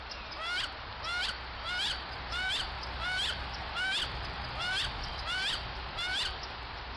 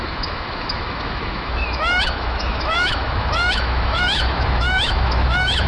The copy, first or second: second